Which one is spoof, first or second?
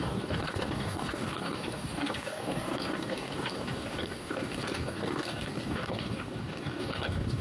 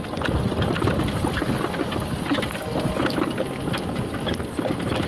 first